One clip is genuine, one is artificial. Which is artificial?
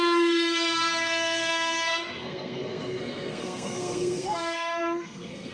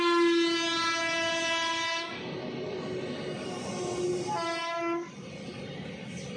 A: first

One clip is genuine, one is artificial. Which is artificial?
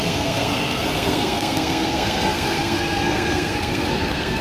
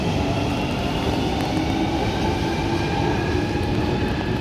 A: first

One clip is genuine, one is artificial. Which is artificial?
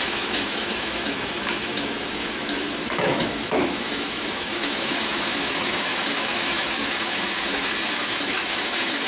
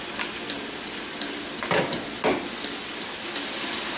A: first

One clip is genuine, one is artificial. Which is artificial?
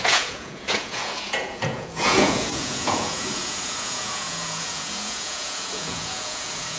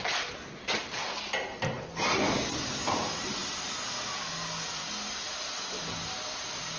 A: first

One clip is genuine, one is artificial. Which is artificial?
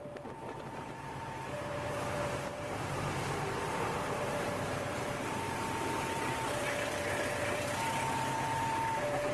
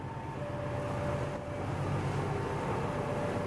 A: first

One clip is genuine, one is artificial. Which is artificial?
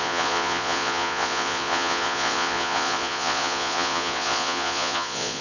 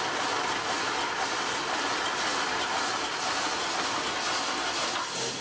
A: first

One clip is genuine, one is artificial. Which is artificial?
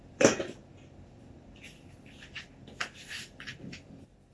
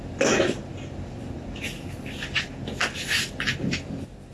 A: first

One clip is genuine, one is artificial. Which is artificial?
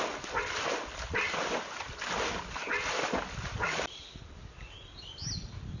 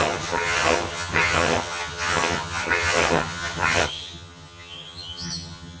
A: second